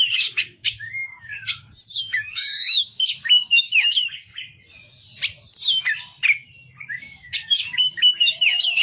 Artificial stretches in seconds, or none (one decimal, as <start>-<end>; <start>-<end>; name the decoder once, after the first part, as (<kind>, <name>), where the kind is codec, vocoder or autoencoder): 0.0-4.3 (codec, DAC); 7.0-8.8